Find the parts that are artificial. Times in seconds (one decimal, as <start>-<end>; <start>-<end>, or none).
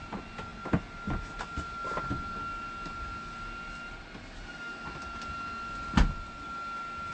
none